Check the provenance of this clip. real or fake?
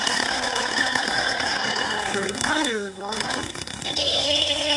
fake